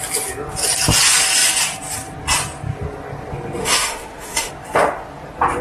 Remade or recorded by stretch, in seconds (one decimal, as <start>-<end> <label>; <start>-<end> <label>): 0.0-3.6 recorded; 3.6-4.5 remade; 4.5-5.6 recorded